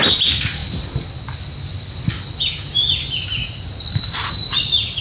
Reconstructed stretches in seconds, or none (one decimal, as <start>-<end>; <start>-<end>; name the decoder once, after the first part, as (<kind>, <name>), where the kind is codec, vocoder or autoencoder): 3.4-4.0 (vocoder, BigVGAN v2)